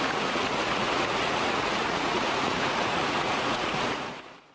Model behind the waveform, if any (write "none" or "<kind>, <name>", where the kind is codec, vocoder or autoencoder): vocoder, Vocos